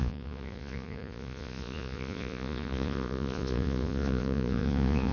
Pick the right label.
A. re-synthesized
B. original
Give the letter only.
A